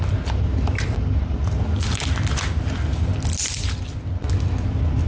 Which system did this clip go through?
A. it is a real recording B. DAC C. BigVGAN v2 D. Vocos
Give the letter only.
A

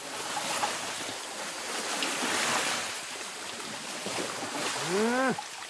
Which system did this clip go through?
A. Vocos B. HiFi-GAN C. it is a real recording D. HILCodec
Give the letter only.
C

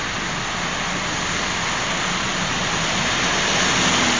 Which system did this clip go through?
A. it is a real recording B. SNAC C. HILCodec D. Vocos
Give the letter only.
A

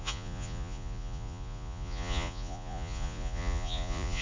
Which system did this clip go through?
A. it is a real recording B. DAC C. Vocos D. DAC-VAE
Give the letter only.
C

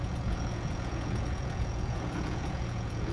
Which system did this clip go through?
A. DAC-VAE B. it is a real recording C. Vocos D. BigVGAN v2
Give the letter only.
C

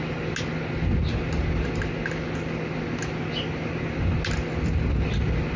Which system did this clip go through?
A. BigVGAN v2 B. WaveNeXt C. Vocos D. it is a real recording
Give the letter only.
D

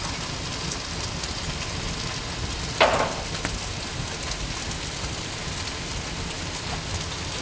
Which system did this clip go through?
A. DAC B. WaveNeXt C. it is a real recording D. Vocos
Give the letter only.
C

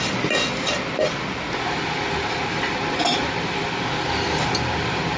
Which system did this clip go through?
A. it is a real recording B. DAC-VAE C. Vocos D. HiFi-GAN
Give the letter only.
A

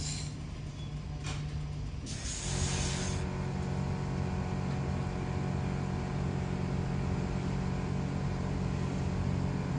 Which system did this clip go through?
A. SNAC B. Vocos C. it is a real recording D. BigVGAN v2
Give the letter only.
C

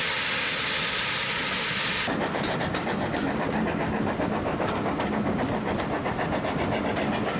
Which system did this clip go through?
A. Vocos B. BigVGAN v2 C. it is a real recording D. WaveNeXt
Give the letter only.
C